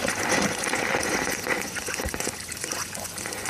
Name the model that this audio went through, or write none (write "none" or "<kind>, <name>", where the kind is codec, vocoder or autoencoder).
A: vocoder, Vocos